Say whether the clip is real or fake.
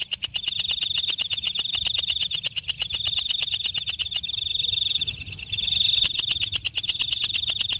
fake